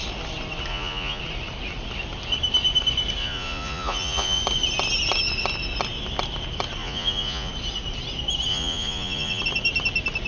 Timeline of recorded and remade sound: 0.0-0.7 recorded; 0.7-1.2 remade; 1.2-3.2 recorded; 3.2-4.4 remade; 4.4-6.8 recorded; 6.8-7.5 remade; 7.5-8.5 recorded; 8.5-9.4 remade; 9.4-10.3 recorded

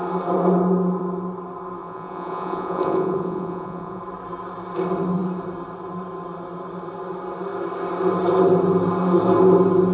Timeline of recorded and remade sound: 0.0-1.8 recorded; 1.8-4.0 remade; 4.0-9.9 recorded

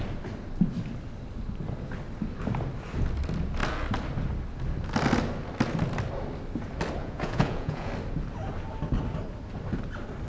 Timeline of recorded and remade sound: 0.0-7.0 recorded; 7.0-7.9 remade; 7.9-10.3 recorded

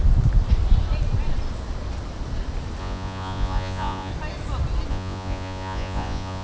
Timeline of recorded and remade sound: 0.0-2.8 recorded; 2.8-4.1 remade; 4.1-4.9 recorded; 4.9-6.4 remade

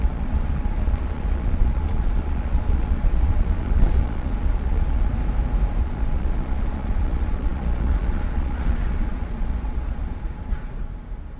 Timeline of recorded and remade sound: 0.0-5.1 remade; 5.1-5.8 recorded; 5.8-10.8 remade; 10.8-11.4 recorded

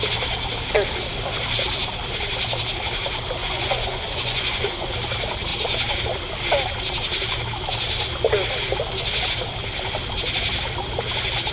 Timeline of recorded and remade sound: 0.0-3.4 recorded; 3.4-4.9 remade; 4.9-11.5 recorded

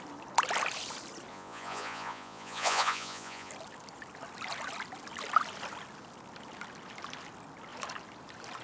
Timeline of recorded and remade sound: 0.0-1.3 recorded; 1.3-3.5 remade; 3.5-8.6 recorded